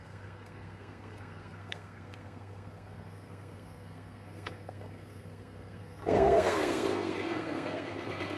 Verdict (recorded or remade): remade